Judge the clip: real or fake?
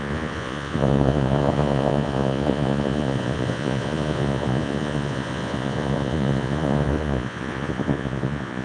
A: fake